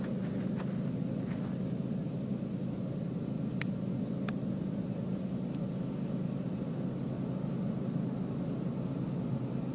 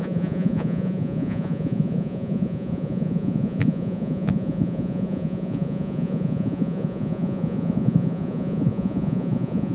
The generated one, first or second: second